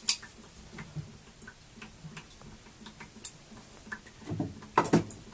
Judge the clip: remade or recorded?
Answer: recorded